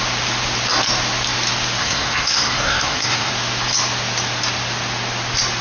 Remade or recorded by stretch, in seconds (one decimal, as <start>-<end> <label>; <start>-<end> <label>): 0.0-1.8 recorded; 1.8-3.3 remade; 3.3-5.6 recorded